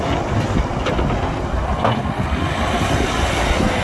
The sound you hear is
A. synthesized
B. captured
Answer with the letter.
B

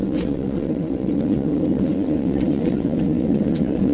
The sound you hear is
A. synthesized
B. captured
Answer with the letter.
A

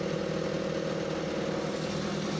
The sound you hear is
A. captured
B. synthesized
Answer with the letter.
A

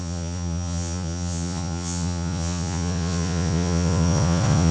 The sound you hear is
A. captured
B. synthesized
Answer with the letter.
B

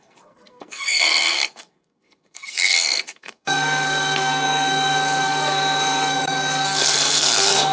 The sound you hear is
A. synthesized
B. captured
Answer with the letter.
A